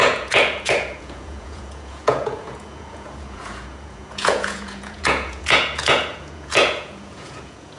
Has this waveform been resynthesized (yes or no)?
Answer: yes